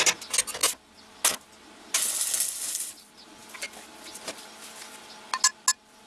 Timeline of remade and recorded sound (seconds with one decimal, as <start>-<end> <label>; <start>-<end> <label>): 0.0-6.1 recorded